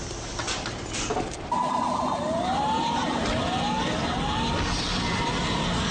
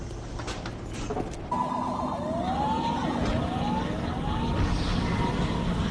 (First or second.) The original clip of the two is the second